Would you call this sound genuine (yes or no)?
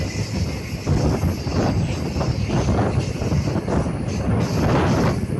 yes